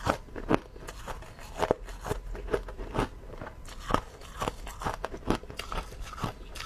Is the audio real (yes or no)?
yes